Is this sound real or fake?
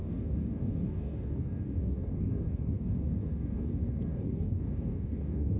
fake